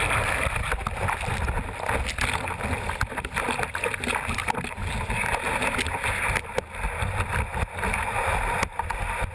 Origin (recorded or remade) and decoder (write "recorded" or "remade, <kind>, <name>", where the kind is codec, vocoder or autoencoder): recorded